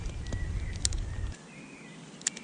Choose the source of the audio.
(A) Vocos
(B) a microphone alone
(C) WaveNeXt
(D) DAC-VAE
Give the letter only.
B